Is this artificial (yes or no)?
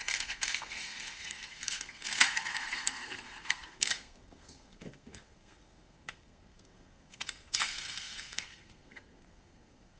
yes